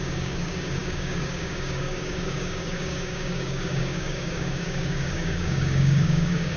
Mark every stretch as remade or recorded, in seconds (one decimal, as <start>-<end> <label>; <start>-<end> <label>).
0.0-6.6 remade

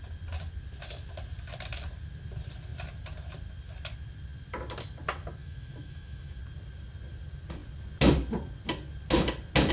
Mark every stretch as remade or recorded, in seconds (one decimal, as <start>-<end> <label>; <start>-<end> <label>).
0.0-5.4 recorded; 5.4-6.4 remade; 6.4-9.7 recorded

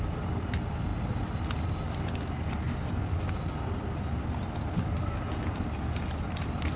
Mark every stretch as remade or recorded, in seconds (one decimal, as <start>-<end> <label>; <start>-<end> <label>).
0.0-6.8 recorded

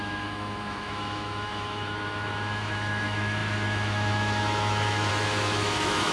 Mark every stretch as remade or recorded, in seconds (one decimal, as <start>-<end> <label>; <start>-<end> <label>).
0.0-6.1 remade

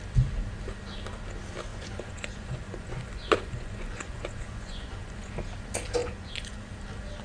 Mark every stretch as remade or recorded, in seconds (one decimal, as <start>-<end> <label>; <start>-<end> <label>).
0.0-1.7 recorded; 1.7-5.3 remade; 5.3-6.0 recorded; 6.0-6.6 remade; 6.6-7.2 recorded

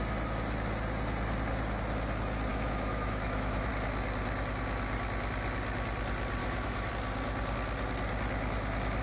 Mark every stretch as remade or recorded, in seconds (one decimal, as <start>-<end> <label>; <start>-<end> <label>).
0.0-2.5 recorded; 2.5-3.7 remade; 3.7-6.4 recorded; 6.4-6.9 remade; 6.9-9.0 recorded

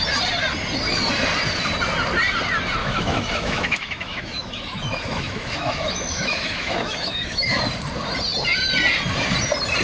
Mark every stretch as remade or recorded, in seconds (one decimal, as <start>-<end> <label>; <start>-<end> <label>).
0.0-2.8 recorded; 2.8-7.6 remade; 7.6-9.8 recorded

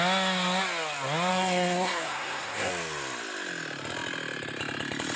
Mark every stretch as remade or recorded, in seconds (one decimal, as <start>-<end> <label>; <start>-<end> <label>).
0.0-1.3 recorded; 1.3-2.7 remade; 2.7-5.2 recorded